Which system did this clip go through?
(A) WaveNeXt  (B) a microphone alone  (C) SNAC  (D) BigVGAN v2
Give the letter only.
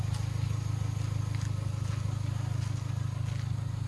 B